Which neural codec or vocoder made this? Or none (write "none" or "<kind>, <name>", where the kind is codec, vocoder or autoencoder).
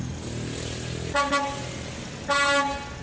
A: none